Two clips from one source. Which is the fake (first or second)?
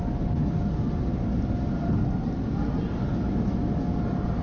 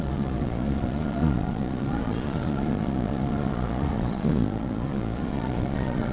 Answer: second